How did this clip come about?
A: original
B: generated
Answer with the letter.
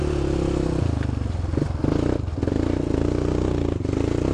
A